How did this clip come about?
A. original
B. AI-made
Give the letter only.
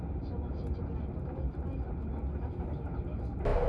A